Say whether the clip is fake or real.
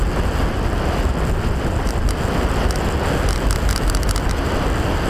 real